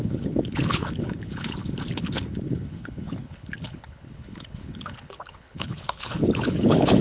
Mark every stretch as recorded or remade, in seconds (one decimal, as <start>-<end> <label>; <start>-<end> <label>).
0.0-7.0 remade